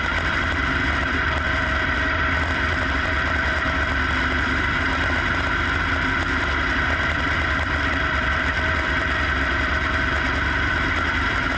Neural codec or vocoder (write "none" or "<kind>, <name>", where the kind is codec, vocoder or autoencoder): vocoder, BigVGAN v2